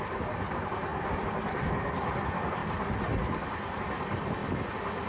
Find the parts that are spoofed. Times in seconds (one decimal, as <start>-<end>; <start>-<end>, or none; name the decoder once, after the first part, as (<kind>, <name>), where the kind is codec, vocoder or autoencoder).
none

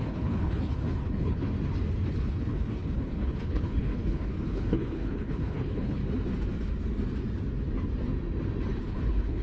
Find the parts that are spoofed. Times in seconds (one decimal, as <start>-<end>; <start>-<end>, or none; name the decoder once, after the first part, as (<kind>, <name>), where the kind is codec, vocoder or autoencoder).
0.0-1.5 (codec, HILCodec); 2.1-6.0; 8.8-9.4

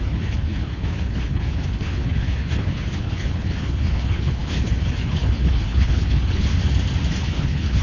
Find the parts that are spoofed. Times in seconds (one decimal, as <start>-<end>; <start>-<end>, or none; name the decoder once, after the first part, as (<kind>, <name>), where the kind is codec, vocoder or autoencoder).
0.0-6.5 (codec, HILCodec); 7.2-7.8

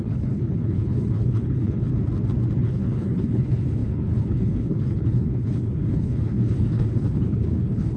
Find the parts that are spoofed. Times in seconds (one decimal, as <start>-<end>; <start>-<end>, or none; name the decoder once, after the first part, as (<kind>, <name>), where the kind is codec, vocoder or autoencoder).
0.0-1.9 (codec, HILCodec); 2.6-8.0

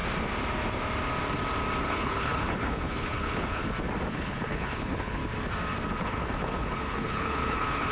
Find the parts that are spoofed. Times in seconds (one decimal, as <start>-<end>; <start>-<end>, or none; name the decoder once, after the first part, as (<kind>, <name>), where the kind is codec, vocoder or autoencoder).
1.8-3.6 (codec, HILCodec); 4.1-5.2; 6.0-7.9